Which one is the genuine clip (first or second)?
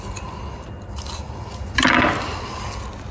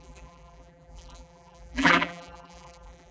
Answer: first